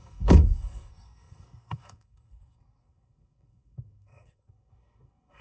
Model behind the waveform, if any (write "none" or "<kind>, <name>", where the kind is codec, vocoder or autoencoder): codec, SNAC